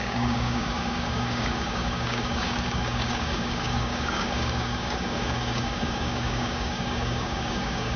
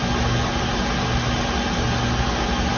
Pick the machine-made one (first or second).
first